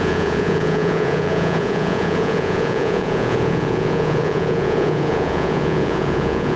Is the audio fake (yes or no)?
yes